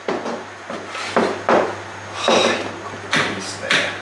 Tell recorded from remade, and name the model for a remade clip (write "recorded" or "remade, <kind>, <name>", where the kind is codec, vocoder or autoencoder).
recorded